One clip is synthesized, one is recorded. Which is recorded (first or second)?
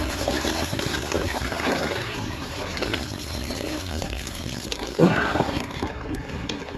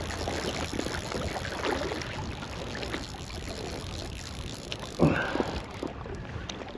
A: second